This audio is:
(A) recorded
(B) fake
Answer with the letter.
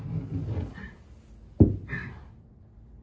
A